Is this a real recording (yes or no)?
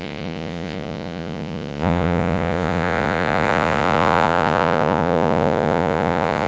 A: no